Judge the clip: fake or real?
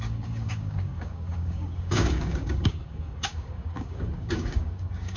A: fake